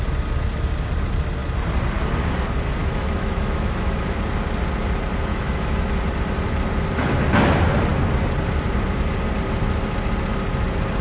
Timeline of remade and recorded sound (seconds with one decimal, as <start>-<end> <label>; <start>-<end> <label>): 0.0-2.8 recorded; 2.8-4.2 remade; 4.2-5.3 recorded; 5.3-5.9 remade; 5.9-11.0 recorded